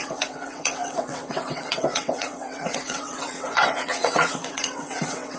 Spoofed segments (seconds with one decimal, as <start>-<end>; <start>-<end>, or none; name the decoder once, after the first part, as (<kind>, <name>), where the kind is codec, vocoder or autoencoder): 0.0-5.4 (vocoder, WaveNeXt)